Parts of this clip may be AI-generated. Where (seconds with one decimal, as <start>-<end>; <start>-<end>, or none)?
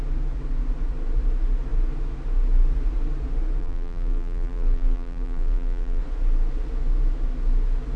3.6-6.0